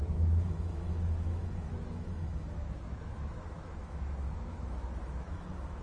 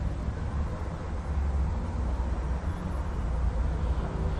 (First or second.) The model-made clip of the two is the first